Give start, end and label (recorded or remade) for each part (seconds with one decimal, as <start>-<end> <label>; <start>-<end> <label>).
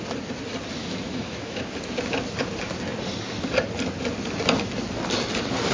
0.0-0.8 recorded; 0.8-1.6 remade; 1.6-5.7 recorded